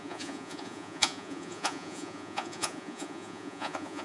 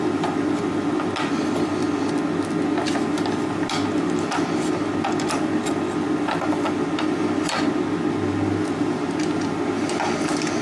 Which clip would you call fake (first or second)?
first